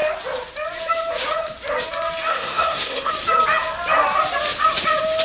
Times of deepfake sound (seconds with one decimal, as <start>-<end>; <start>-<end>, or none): 2.3-3.1